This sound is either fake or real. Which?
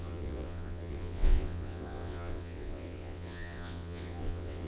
fake